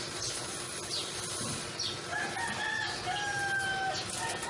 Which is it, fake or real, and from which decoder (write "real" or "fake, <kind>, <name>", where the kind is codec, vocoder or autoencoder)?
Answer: real